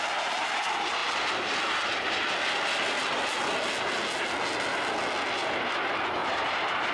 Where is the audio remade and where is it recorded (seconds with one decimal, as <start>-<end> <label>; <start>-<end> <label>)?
0.0-6.2 recorded; 6.2-6.9 remade

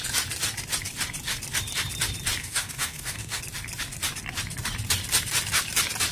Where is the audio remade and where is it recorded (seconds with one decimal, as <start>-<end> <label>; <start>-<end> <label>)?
0.0-2.4 recorded; 2.4-3.4 remade; 3.4-6.1 recorded